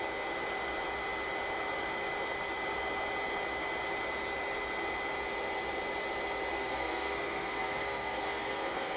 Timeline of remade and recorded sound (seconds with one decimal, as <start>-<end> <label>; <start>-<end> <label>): 0.0-6.6 recorded; 6.6-9.0 remade

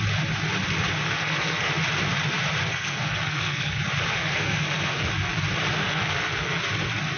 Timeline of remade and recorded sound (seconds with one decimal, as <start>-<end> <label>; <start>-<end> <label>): 0.0-1.0 recorded; 1.0-1.7 remade; 1.7-2.6 recorded; 2.6-3.8 remade; 3.8-4.2 recorded; 4.2-5.1 remade; 5.1-5.8 recorded; 5.8-6.6 remade; 6.6-7.2 recorded

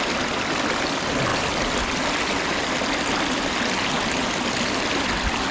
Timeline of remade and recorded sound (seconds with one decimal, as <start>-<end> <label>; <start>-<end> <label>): 0.0-5.5 recorded

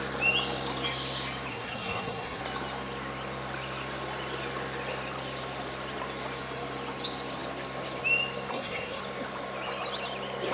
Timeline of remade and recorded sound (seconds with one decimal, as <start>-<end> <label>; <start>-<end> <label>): 0.0-1.5 recorded; 1.5-2.4 remade; 2.4-8.5 recorded; 8.5-9.0 remade; 9.0-10.5 recorded